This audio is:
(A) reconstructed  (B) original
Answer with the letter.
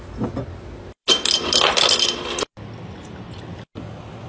B